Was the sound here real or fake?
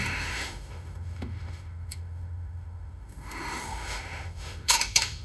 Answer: fake